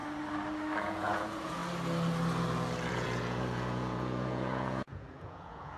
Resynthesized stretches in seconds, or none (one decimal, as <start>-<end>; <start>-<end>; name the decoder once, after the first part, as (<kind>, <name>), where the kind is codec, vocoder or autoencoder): 0.8-1.6 (vocoder, Vocos); 2.9-5.8